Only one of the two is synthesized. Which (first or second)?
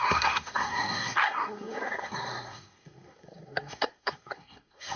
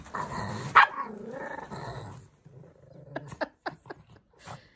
first